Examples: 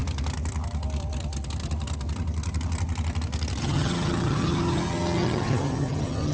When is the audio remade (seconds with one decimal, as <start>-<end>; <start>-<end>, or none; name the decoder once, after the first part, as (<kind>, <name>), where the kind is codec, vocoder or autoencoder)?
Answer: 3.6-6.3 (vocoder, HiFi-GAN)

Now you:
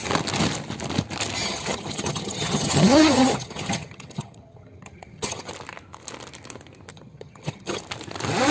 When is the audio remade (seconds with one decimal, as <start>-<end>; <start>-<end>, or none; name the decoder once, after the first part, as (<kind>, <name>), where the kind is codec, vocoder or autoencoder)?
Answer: 1.4-5.5 (vocoder, HiFi-GAN); 6.9-7.8

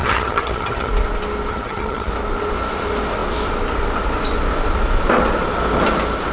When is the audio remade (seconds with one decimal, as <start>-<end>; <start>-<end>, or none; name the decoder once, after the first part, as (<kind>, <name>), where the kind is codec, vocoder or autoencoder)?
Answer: 0.0-0.9 (vocoder, HiFi-GAN); 1.5-2.1

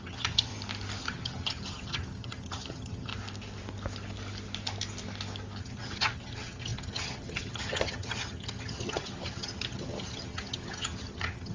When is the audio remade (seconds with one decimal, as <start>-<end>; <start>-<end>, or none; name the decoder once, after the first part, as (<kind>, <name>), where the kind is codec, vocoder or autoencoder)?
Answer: 0.0-0.5 (vocoder, HiFi-GAN); 1.0-3.1; 5.6-11.5

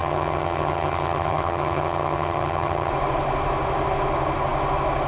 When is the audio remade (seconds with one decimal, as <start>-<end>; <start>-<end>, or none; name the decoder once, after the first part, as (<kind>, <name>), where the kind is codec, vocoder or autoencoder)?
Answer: 0.0-2.9 (vocoder, HiFi-GAN)